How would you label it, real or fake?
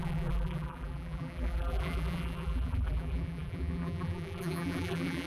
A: fake